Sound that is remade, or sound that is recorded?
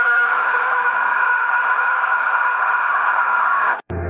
remade